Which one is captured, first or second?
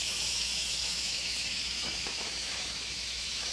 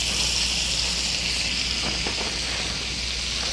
second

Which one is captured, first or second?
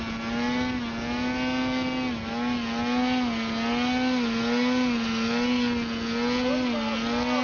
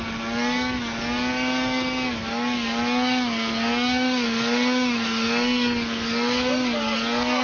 first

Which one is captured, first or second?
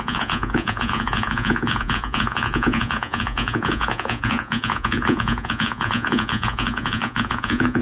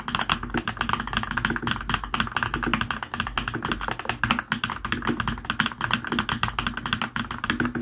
second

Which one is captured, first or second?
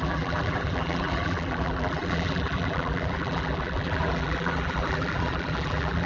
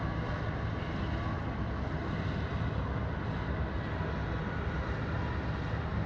second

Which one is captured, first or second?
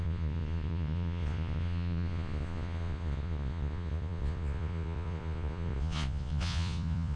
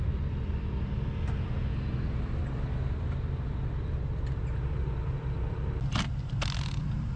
second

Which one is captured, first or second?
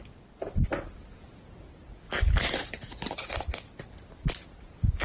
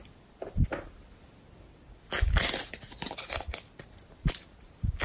first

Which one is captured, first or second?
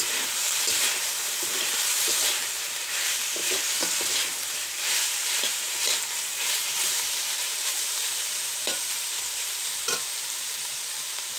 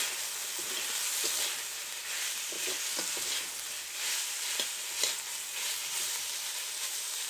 second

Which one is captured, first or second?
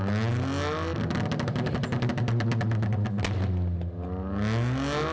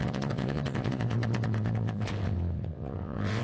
first